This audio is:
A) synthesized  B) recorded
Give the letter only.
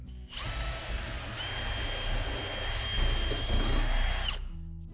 B